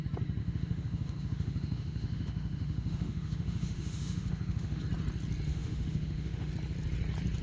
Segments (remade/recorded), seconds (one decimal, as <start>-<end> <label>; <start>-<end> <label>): 0.0-0.4 recorded; 0.4-4.8 remade; 4.8-5.5 recorded; 5.5-6.5 remade; 6.5-7.4 recorded